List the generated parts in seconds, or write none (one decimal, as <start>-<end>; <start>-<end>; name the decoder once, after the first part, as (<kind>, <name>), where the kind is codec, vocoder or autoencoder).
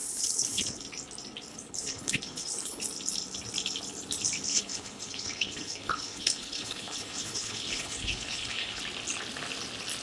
0.0-0.8 (codec, HILCodec); 1.5-2.8; 4.5-8.8